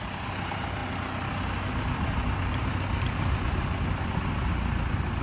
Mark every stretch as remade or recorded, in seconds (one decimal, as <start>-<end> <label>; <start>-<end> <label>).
0.0-5.2 recorded